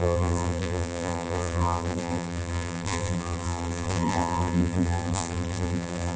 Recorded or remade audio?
remade